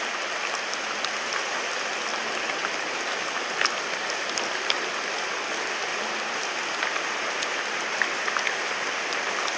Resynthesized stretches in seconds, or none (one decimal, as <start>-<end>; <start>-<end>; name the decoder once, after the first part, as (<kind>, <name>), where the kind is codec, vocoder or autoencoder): none